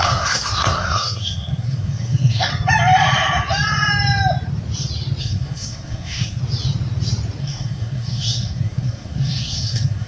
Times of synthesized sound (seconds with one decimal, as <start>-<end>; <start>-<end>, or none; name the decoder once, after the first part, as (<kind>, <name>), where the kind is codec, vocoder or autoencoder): 0.0-2.5 (codec, SNAC); 5.2-6.4; 7.4-10.1